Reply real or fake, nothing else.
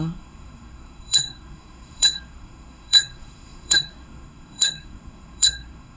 fake